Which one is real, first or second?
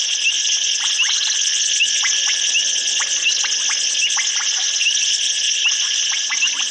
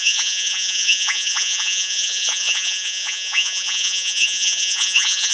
first